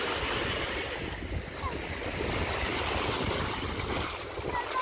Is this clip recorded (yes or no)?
yes